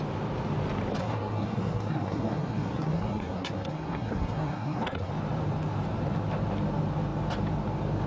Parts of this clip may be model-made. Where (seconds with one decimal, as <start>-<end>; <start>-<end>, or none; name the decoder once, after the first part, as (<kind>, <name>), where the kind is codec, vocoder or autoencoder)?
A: 1.0-5.1 (codec, SNAC)